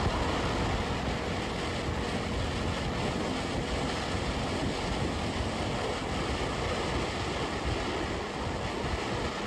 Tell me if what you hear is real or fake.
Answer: real